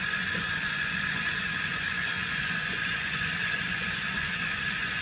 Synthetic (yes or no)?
yes